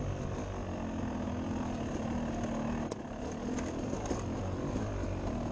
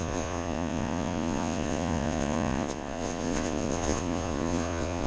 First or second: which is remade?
second